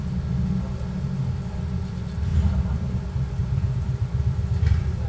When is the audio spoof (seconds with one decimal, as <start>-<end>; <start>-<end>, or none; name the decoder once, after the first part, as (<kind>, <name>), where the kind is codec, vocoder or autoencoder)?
2.3-2.9 (vocoder, BigVGAN v2); 3.4-4.1